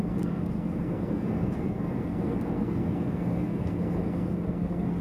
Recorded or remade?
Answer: remade